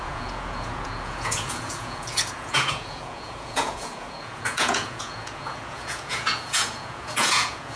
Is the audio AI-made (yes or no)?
yes